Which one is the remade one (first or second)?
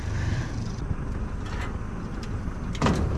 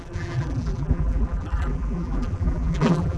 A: second